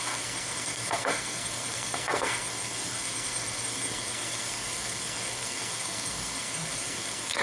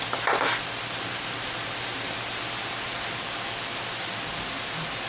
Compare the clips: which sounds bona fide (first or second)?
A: second